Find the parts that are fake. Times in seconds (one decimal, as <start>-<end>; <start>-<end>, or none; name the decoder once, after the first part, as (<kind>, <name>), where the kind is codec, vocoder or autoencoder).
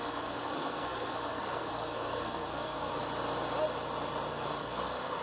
0.0-3.0 (codec, SNAC); 4.3-5.2